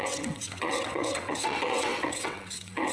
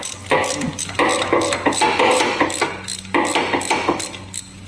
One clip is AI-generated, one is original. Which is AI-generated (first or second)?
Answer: first